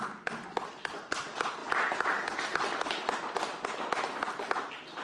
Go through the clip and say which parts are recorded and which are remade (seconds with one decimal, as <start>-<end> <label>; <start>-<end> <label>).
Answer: 0.0-5.0 recorded